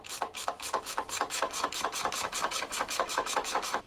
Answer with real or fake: fake